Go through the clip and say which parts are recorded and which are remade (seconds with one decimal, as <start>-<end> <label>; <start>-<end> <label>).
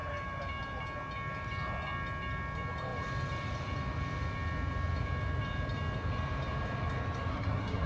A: 0.0-7.3 recorded; 7.3-7.9 remade